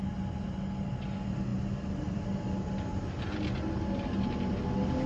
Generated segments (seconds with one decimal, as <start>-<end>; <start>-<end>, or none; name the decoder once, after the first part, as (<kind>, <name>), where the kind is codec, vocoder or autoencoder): 1.5-2.4 (vocoder, BigVGAN v2)

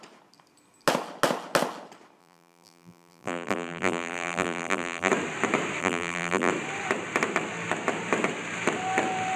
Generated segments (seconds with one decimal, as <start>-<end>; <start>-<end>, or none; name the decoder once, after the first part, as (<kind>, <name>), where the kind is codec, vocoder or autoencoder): 2.2-5.1 (vocoder, BigVGAN v2); 5.8-6.5